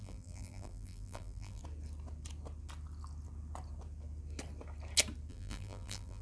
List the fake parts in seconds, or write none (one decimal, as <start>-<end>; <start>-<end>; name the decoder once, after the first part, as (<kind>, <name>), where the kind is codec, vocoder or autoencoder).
0.0-1.6 (vocoder, BigVGAN v2); 5.3-6.2